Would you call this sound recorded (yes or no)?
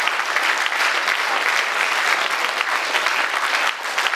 yes